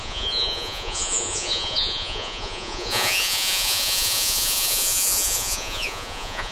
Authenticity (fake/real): fake